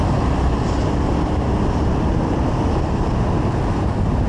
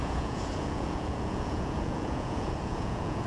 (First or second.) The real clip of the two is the first